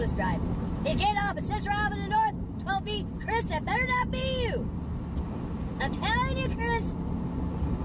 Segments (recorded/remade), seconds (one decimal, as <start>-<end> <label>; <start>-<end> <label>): 0.0-7.8 recorded